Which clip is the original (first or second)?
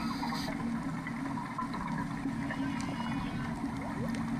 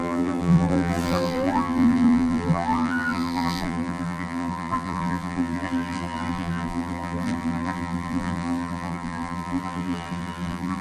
first